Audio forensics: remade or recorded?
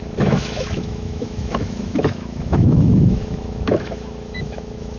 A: remade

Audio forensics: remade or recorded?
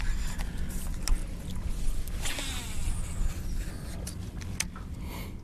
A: recorded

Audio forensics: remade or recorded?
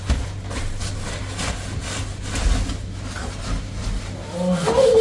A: recorded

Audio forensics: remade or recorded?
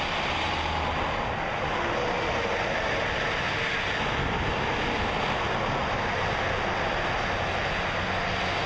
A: recorded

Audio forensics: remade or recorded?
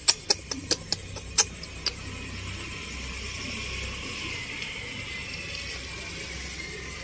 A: recorded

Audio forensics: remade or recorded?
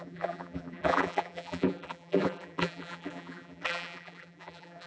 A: remade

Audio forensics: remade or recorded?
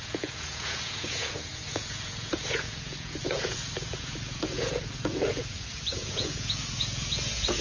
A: remade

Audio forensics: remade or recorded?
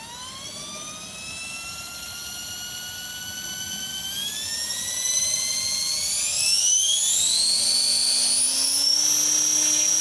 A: recorded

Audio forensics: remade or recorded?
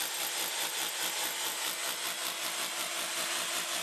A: recorded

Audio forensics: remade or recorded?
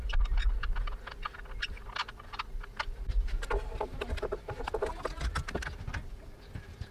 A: recorded